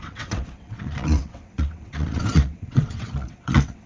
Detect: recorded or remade remade